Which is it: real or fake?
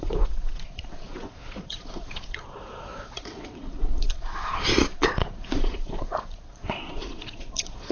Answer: fake